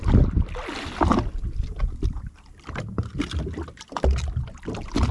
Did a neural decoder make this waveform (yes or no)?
no